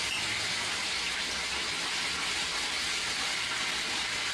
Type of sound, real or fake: real